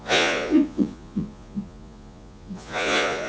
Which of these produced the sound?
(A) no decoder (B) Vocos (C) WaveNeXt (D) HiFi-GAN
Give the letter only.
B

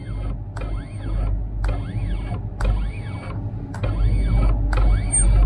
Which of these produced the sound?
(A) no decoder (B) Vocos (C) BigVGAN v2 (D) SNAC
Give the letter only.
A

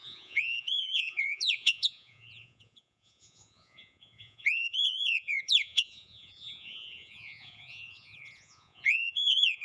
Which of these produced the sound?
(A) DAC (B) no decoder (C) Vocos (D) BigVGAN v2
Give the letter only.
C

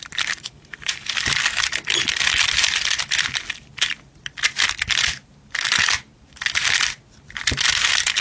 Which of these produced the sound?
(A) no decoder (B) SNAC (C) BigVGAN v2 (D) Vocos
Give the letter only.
A